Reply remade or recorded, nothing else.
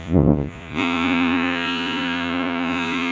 remade